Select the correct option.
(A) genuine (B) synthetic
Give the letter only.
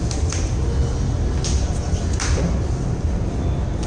A